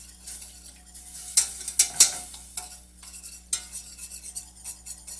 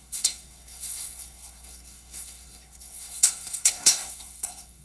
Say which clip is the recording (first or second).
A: first